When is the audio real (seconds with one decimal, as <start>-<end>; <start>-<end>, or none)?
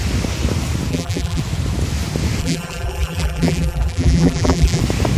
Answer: 0.0-0.9; 1.4-2.4; 4.8-5.2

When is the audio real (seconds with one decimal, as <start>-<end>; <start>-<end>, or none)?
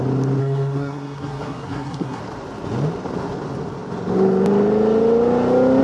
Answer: 0.0-0.4; 2.2-5.8